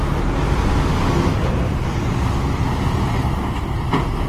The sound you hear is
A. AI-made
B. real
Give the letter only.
B